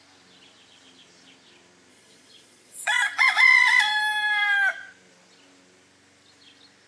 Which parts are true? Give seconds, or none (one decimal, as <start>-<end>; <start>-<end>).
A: 0.0-1.9; 3.9-6.9